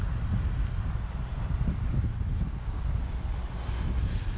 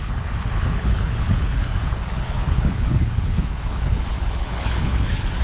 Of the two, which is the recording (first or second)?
first